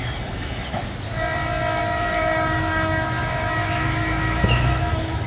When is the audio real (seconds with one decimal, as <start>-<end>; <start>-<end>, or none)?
0.8-1.8